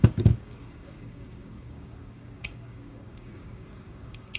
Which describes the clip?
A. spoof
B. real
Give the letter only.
A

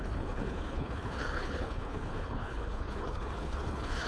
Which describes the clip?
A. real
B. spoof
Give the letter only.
B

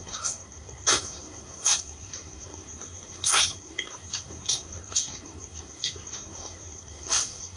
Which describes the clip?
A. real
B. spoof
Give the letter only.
B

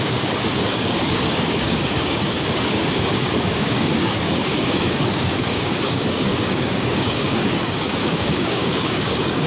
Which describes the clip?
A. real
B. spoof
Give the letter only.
B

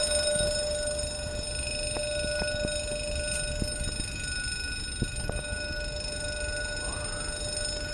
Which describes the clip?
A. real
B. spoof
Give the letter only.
A